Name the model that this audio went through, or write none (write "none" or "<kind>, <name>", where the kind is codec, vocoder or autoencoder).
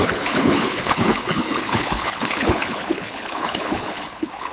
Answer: codec, HILCodec